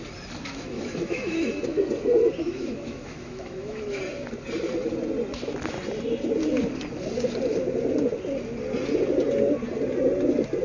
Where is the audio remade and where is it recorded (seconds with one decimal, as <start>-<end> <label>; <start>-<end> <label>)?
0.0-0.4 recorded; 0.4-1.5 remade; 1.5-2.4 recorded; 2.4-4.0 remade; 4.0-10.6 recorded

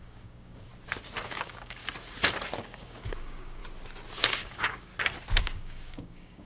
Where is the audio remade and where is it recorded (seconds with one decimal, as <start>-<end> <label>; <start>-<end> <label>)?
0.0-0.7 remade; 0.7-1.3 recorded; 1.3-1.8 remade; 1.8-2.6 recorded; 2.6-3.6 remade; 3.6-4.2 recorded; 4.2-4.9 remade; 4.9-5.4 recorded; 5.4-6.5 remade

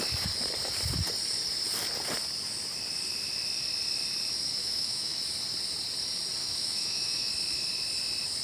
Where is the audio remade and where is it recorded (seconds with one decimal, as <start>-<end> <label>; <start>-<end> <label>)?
0.0-4.6 recorded; 4.6-5.2 remade; 5.2-6.4 recorded; 6.4-7.3 remade; 7.3-8.4 recorded

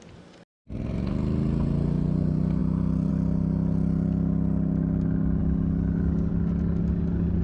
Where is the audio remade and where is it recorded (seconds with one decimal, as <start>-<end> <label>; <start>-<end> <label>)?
0.0-7.4 recorded

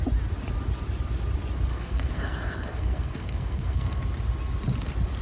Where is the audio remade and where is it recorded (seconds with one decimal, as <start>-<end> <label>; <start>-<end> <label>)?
0.0-1.7 recorded; 1.7-4.0 remade; 4.0-5.2 recorded

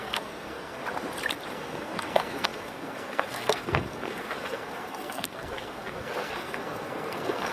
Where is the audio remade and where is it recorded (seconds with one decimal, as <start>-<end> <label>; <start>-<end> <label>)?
0.0-0.8 remade; 0.8-1.5 recorded; 1.5-7.5 remade